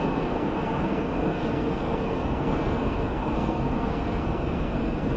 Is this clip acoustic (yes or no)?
no